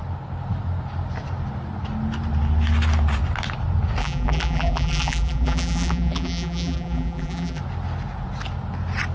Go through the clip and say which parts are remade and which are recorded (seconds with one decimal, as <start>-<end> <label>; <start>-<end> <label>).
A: 0.0-4.0 recorded; 4.0-7.6 remade; 7.6-9.1 recorded